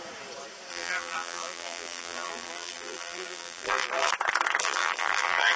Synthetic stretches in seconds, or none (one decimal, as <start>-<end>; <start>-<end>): 0.7-4.1; 4.6-5.6